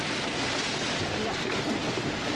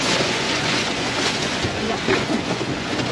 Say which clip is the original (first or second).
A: first